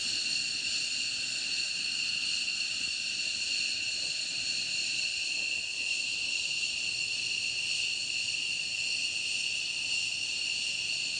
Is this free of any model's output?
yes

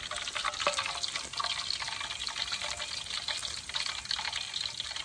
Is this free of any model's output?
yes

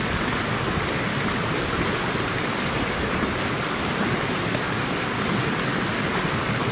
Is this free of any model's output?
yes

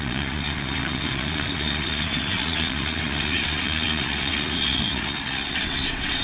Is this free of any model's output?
no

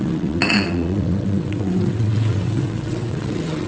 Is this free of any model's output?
no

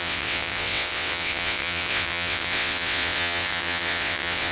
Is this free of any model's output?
no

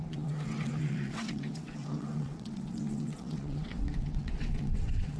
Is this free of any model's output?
no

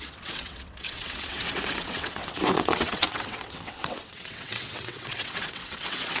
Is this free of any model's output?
no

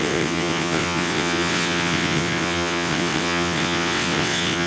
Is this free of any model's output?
no